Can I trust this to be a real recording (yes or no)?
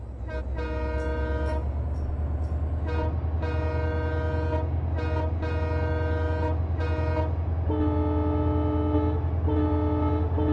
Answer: yes